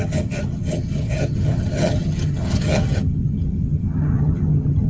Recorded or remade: remade